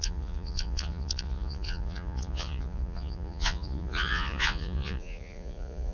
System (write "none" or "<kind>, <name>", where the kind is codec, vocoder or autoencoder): vocoder, Vocos